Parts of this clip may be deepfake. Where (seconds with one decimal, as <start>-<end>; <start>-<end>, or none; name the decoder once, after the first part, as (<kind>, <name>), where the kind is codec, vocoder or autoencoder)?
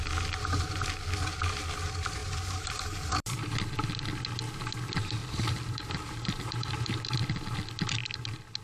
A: 2.2-3.4 (vocoder, BigVGAN v2); 5.2-7.1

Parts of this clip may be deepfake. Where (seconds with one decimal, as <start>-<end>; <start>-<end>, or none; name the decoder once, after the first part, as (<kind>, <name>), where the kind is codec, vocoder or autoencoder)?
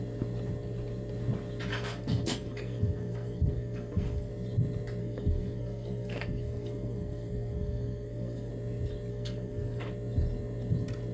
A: 1.7-4.3 (codec, SNAC); 5.0-8.5; 9.1-9.9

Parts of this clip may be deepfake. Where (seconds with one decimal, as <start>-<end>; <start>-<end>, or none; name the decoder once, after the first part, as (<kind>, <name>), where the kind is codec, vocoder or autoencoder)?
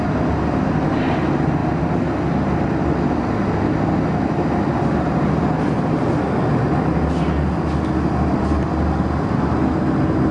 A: none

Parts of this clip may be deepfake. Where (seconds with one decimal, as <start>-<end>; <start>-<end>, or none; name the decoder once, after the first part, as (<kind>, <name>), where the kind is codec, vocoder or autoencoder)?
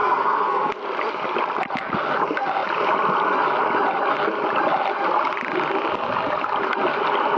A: 0.0-0.7 (codec, SNAC)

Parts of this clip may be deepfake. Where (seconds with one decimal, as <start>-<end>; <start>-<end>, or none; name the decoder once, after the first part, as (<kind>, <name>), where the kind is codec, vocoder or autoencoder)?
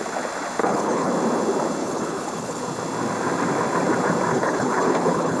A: 0.6-1.1 (codec, HILCodec); 1.8-2.6; 4.3-5.4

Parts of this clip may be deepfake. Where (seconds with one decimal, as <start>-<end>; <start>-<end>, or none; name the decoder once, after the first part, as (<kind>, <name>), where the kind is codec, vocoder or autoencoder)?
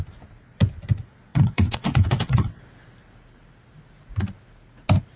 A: 1.3-2.6 (vocoder, WaveNeXt)